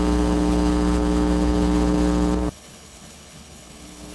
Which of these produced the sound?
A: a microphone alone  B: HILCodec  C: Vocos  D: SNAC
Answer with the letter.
B